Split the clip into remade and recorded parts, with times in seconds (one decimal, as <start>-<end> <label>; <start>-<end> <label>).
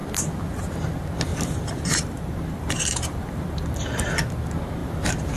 0.0-1.3 recorded; 1.3-4.1 remade; 4.1-4.8 recorded; 4.8-5.4 remade